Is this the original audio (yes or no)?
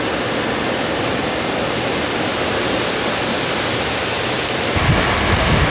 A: yes